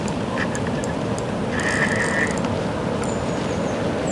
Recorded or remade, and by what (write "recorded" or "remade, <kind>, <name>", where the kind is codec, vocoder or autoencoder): recorded